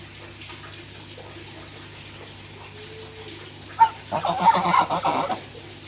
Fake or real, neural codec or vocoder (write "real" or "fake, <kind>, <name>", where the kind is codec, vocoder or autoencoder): real